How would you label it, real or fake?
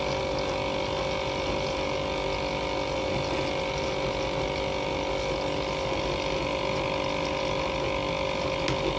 real